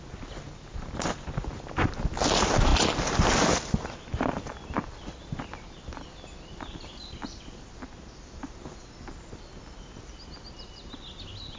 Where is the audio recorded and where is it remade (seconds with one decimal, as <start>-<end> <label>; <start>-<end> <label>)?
0.0-11.6 recorded